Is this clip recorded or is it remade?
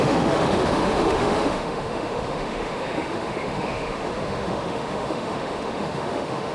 remade